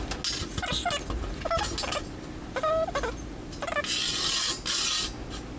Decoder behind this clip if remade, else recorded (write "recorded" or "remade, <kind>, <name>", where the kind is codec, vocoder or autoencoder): recorded